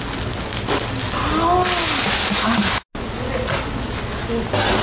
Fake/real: real